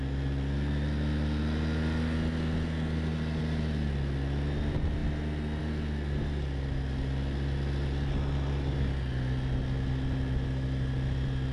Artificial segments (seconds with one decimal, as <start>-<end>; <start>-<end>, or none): none